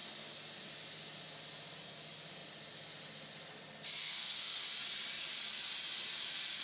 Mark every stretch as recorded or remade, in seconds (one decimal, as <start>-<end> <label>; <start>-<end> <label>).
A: 0.0-4.0 recorded; 4.0-4.6 remade; 4.6-6.6 recorded